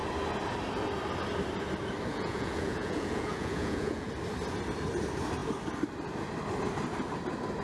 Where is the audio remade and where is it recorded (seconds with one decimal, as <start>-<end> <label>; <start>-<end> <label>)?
0.0-2.1 recorded; 2.1-4.1 remade; 4.1-7.6 recorded